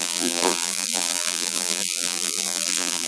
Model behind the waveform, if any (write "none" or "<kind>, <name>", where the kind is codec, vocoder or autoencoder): vocoder, BigVGAN v2